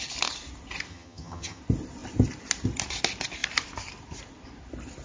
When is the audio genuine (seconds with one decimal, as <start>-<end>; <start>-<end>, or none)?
0.0-0.9; 1.6-5.0